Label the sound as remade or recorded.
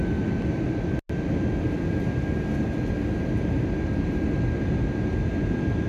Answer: recorded